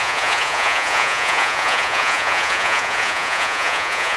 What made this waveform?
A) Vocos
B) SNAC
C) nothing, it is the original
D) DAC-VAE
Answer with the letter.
A